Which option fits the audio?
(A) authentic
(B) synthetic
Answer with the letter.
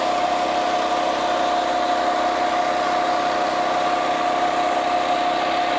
A